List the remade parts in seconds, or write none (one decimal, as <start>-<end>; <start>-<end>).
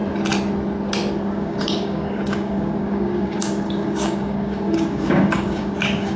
1.1-6.2